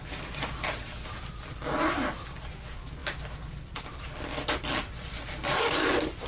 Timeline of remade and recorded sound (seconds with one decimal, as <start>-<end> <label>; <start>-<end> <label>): 0.0-6.3 remade